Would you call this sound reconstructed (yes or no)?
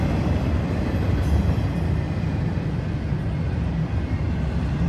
no